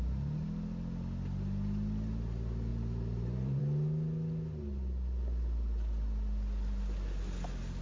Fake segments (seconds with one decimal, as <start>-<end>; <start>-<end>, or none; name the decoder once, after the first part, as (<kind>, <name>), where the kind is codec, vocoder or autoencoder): 2.7-3.6 (vocoder, BigVGAN v2)